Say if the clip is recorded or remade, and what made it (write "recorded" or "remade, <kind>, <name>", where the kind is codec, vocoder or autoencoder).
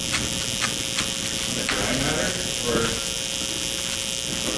recorded